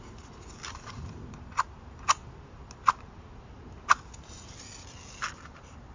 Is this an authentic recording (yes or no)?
yes